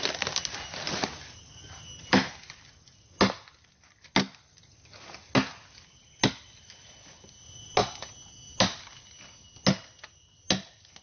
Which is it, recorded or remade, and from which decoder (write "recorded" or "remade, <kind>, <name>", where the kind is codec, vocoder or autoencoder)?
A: recorded